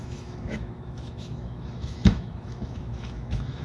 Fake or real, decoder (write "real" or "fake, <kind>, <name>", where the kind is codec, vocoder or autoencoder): fake, autoencoder, DAC-VAE